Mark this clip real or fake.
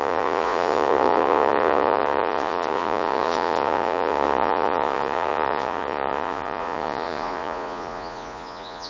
fake